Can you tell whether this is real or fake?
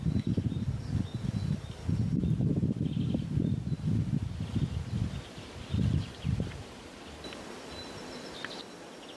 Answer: real